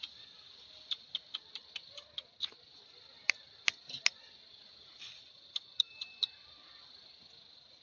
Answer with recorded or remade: recorded